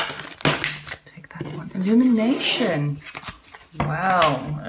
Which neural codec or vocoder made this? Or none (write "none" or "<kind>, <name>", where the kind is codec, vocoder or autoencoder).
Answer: none